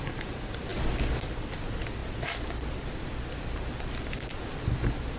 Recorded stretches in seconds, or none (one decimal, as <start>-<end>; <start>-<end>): 0.0-5.2